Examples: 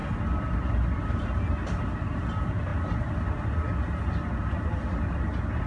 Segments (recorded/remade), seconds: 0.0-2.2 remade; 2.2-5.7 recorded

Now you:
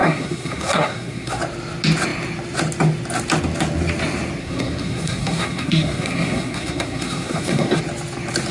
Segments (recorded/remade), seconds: 0.0-1.4 remade; 1.4-4.4 recorded; 4.4-7.8 remade; 7.8-8.5 recorded

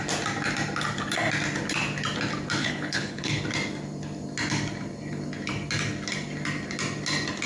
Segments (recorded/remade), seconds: 0.0-2.6 recorded; 2.6-3.4 remade; 3.4-7.5 recorded